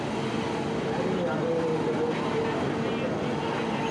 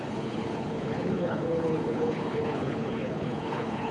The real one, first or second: first